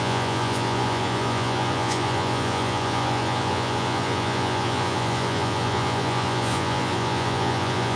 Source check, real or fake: fake